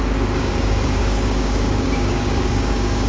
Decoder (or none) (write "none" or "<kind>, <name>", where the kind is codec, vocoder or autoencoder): codec, DAC